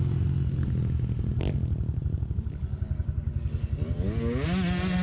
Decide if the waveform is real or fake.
real